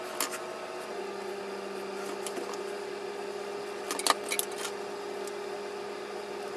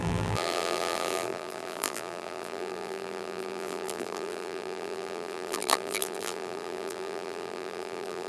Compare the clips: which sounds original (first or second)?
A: first